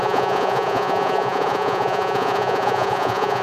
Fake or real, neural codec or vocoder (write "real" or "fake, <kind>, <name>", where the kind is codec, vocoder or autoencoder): fake, vocoder, Vocos